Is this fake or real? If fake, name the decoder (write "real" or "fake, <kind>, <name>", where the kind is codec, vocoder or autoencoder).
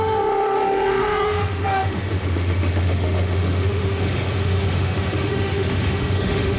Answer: fake, autoencoder, DAC-VAE